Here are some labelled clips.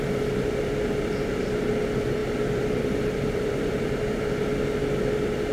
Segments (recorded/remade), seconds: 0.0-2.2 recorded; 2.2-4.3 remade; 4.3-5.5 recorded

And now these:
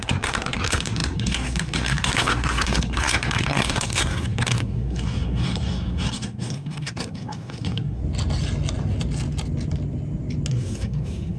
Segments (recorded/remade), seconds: 0.0-8.0 remade; 8.0-10.5 recorded; 10.5-11.4 remade

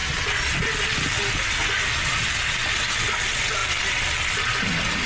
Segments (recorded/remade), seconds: 0.0-5.1 recorded

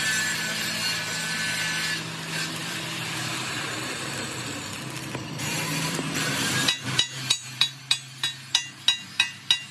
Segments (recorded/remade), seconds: 0.0-2.6 recorded; 2.6-7.8 remade; 7.8-9.7 recorded

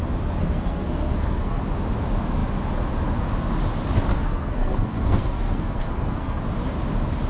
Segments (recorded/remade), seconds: 0.0-0.4 recorded; 0.4-1.6 remade; 1.6-4.1 recorded; 4.1-6.4 remade; 6.4-7.3 recorded

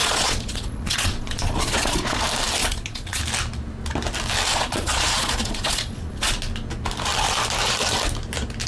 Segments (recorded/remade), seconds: 0.0-2.2 remade; 2.2-2.6 recorded; 2.6-3.2 remade; 3.2-4.5 recorded; 4.5-6.3 remade; 6.3-8.7 recorded

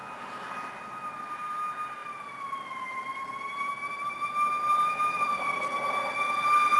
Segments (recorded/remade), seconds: 0.0-2.0 recorded; 2.0-5.9 remade; 5.9-6.8 recorded